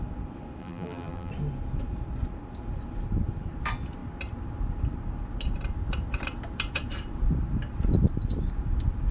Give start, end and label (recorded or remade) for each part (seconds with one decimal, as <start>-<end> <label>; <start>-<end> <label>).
0.0-0.6 recorded; 0.6-1.3 remade; 1.3-9.1 recorded